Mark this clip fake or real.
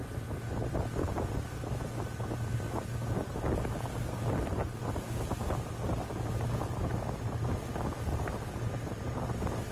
real